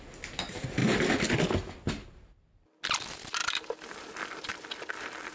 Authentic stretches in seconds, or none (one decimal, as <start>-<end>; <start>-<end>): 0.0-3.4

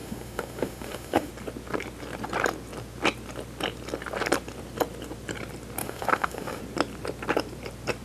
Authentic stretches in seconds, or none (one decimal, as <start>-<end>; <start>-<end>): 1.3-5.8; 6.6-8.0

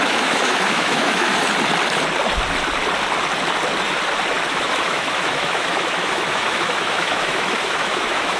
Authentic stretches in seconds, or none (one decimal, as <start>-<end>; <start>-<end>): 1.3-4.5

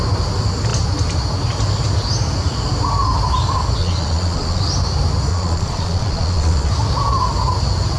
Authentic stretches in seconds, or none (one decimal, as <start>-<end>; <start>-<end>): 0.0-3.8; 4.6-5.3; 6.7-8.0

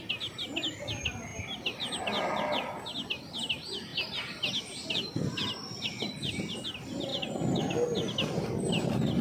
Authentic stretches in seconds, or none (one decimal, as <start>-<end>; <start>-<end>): 0.0-1.3; 2.0-9.2